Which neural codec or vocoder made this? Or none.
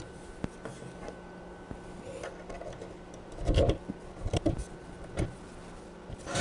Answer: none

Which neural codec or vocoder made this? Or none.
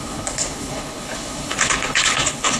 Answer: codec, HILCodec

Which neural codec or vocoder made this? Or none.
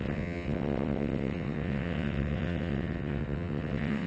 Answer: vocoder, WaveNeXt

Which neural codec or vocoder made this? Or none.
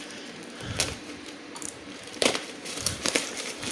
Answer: vocoder, BigVGAN v2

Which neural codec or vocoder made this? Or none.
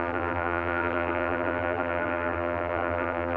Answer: vocoder, BigVGAN v2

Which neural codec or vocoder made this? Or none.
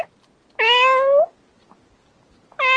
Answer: none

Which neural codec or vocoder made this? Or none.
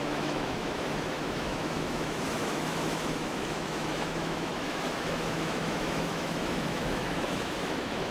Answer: autoencoder, DAC-VAE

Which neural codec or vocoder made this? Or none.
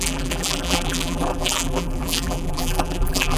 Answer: vocoder, BigVGAN v2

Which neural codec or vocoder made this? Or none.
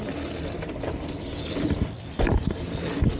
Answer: none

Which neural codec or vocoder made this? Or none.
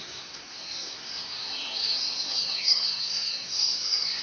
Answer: codec, SNAC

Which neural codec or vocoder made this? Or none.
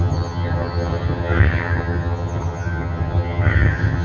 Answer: vocoder, HiFi-GAN